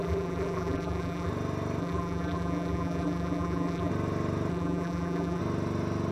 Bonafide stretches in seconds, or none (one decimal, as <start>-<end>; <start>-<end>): 1.3-1.8; 3.9-4.5; 5.4-6.1